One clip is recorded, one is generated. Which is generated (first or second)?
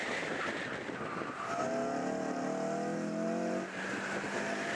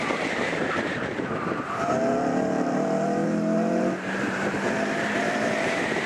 second